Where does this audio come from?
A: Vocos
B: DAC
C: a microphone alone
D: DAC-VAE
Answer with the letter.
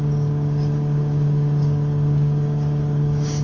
B